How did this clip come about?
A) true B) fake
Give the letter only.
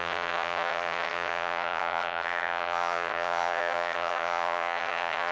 B